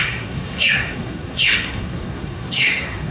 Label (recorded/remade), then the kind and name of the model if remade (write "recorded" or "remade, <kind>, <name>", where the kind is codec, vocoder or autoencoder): remade, codec, SNAC